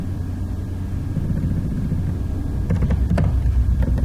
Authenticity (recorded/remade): recorded